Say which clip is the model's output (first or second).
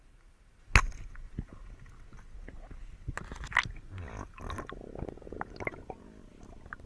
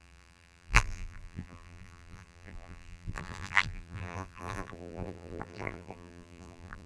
second